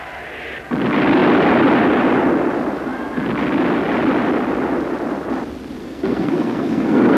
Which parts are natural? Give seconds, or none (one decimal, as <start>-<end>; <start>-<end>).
0.0-5.8